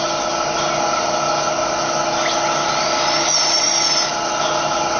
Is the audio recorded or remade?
recorded